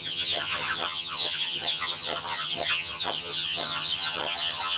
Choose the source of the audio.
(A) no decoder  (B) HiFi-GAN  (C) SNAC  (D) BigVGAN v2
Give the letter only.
B